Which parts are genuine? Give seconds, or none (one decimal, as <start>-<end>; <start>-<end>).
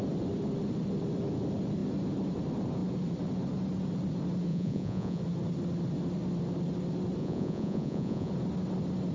0.0-4.5; 5.2-7.2; 8.3-9.1